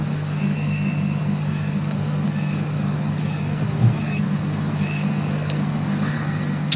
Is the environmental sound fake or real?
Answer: fake